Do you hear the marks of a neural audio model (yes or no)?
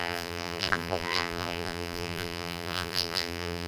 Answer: yes